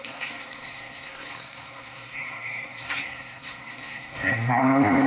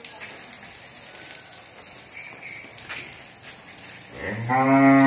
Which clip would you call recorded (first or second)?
second